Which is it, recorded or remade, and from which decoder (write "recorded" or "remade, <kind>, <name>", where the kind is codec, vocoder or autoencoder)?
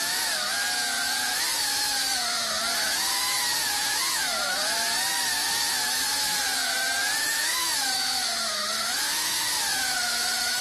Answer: remade, autoencoder, DAC-VAE